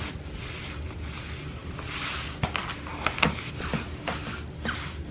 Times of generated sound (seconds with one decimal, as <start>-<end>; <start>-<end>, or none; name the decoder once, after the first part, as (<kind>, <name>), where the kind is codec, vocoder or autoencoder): 1.6-5.1 (vocoder, BigVGAN v2)